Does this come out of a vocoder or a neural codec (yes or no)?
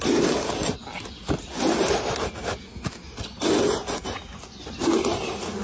no